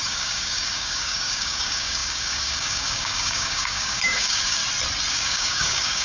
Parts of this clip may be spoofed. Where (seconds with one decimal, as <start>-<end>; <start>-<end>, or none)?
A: 0.0-4.6; 5.1-6.0